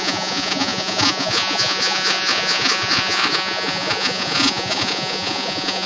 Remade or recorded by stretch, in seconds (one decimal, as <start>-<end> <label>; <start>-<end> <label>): 0.0-5.9 remade